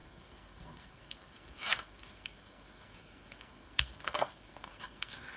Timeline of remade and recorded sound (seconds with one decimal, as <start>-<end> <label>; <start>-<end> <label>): 0.0-5.4 remade